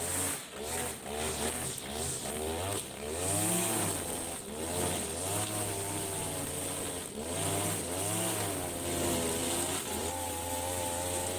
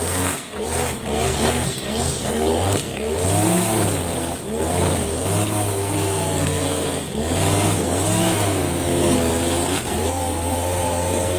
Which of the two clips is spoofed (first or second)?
second